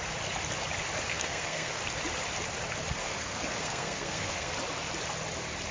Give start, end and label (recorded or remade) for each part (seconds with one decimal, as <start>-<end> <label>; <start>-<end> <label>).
0.0-1.1 recorded; 1.1-1.8 remade; 1.8-3.0 recorded; 3.0-4.5 remade; 4.5-5.7 recorded